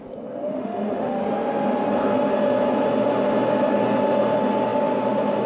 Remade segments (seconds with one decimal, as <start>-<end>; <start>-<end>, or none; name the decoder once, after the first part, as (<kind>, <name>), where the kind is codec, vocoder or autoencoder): 0.5-1.2 (autoencoder, DAC-VAE)